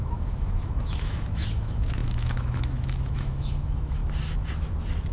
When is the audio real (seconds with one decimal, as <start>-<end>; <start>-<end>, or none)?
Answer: 4.0-5.1